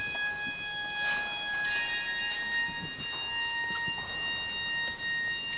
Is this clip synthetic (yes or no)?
no